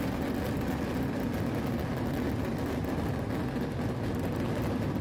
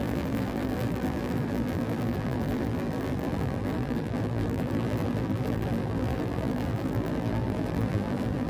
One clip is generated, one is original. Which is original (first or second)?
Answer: first